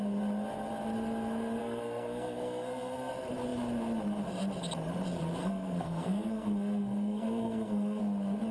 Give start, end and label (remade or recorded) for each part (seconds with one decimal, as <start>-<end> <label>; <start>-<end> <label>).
0.0-1.6 recorded; 1.6-3.1 remade; 3.1-5.4 recorded; 5.4-8.0 remade; 8.0-8.5 recorded